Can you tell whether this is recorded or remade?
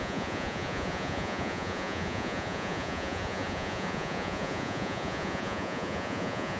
remade